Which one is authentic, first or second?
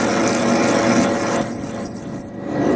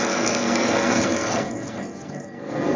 first